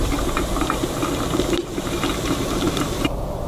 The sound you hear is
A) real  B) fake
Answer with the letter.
A